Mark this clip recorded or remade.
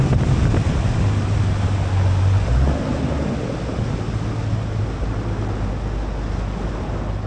recorded